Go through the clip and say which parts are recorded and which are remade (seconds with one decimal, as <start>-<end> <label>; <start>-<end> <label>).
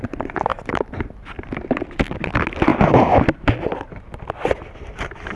0.0-5.4 recorded